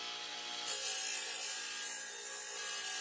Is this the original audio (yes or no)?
yes